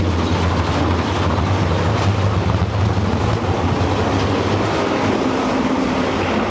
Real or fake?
real